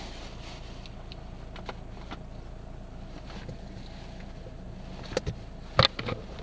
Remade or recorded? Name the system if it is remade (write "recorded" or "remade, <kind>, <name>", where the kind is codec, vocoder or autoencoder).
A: recorded